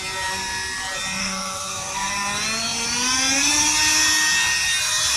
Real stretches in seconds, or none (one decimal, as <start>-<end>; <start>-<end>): 0.0-1.2; 2.1-5.2